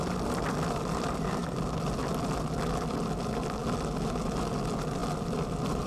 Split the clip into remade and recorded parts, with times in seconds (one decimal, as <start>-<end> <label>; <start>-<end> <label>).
0.0-5.9 recorded